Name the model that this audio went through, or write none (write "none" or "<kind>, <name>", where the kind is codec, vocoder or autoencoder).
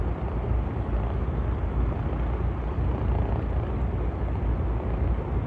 none